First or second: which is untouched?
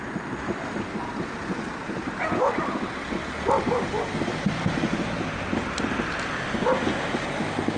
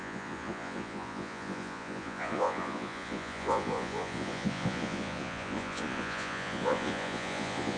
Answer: first